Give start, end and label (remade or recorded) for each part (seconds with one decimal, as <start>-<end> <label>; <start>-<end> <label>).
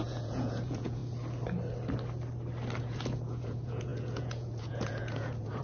0.0-1.0 remade; 1.0-2.8 recorded; 2.8-5.6 remade